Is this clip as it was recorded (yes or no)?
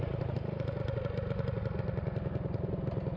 yes